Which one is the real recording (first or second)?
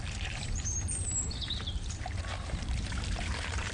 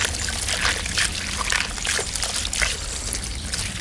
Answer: second